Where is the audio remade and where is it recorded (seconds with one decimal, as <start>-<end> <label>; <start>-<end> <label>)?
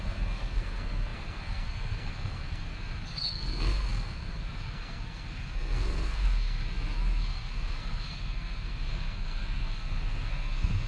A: 0.0-10.9 remade